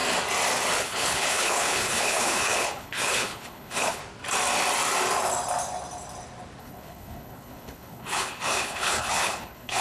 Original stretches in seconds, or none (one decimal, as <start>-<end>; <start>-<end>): 0.0-0.8; 4.0-6.6